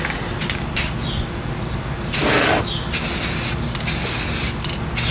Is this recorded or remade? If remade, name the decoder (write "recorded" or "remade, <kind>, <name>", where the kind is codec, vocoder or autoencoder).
recorded